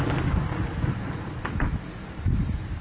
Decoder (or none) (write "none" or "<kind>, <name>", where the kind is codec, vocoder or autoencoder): none